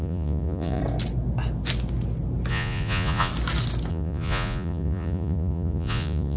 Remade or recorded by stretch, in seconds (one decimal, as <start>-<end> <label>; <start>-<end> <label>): 0.0-0.8 remade; 0.8-2.5 recorded; 2.5-3.3 remade; 3.3-3.9 recorded; 3.9-6.4 remade